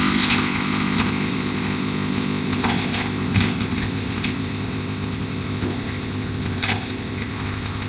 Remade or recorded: remade